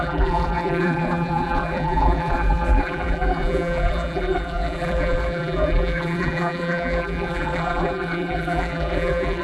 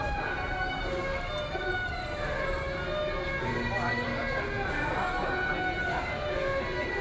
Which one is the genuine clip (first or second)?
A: second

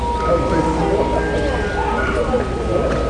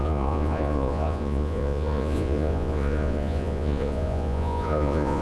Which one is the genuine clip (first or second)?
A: first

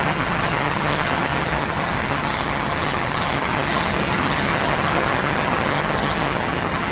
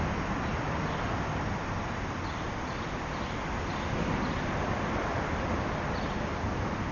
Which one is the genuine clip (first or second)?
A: second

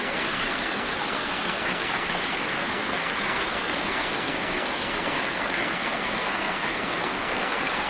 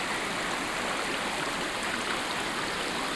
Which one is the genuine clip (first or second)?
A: second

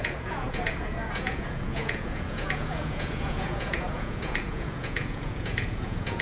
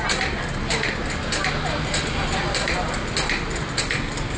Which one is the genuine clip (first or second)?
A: second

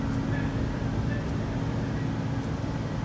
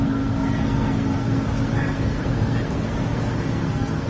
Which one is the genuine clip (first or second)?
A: first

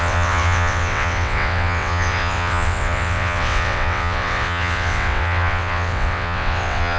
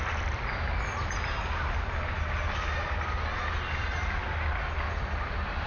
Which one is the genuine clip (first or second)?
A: second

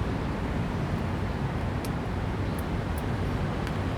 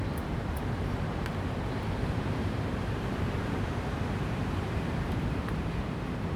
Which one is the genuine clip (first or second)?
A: first